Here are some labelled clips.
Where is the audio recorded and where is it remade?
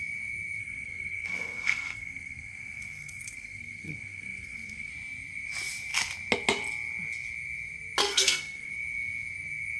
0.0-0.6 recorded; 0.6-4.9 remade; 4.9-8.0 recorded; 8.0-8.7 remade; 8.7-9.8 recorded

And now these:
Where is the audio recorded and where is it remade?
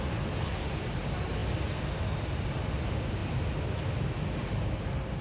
0.0-5.2 recorded